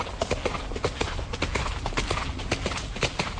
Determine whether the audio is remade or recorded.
recorded